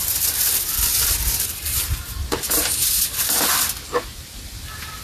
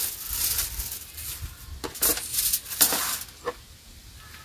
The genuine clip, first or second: second